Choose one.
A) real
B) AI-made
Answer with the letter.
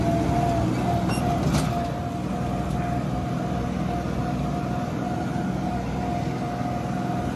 A